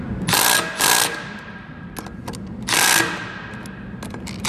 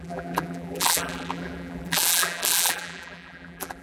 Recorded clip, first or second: first